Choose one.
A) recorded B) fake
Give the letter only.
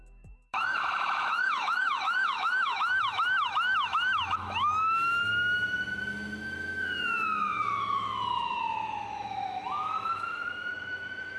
B